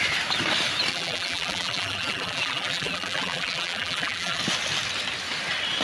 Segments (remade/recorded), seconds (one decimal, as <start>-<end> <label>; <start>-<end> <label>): 0.0-0.9 recorded; 0.9-4.4 remade; 4.4-5.8 recorded